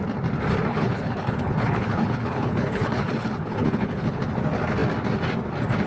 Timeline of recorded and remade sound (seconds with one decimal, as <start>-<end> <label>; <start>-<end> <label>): 0.0-0.7 recorded; 0.7-4.2 remade; 4.2-5.9 recorded